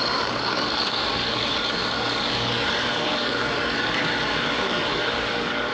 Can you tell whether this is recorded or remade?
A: remade